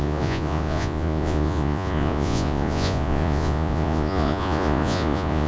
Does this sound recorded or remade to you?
remade